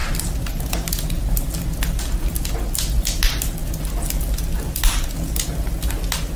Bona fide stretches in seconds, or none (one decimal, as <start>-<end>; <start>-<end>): 0.0-6.4